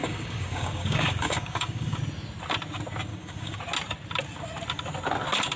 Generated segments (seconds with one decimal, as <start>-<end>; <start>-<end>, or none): 0.0-2.0; 3.1-3.6